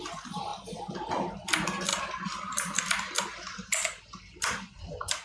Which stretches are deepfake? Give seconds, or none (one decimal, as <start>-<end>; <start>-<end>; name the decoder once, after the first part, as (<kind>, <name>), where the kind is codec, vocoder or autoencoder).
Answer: 1.9-3.1 (vocoder, BigVGAN v2)